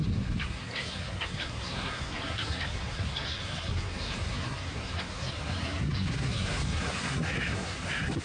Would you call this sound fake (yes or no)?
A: yes